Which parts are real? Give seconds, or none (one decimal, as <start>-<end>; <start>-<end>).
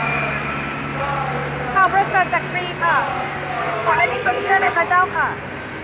0.0-3.6; 4.8-5.8